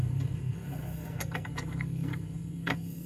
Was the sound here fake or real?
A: fake